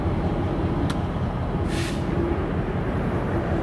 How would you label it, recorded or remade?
remade